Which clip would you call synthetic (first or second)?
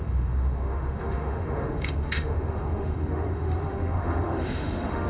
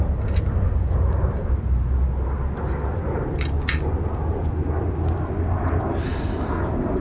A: first